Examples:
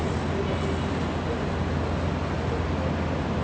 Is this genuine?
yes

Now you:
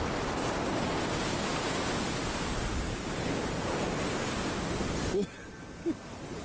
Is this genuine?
yes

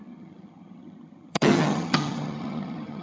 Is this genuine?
no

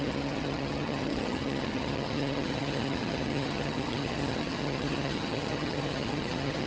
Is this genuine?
no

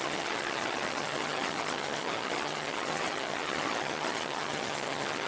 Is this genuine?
no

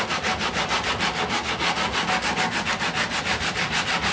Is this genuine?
yes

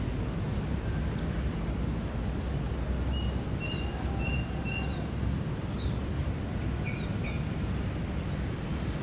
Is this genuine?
yes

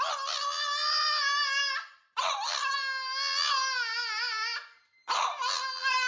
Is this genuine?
yes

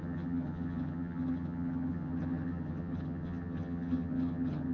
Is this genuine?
no